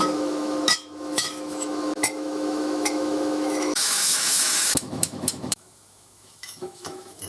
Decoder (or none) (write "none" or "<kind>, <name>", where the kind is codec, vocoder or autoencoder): autoencoder, DAC-VAE